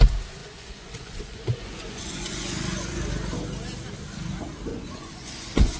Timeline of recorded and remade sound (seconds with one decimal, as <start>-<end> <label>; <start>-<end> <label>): 0.0-0.4 recorded; 0.4-3.3 remade; 3.3-4.7 recorded; 4.7-5.8 remade